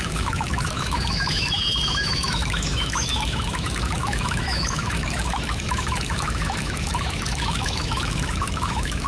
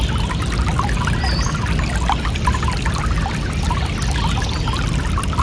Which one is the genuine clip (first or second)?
second